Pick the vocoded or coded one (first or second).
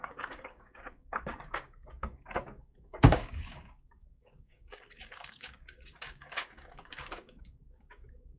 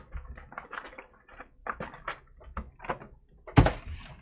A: first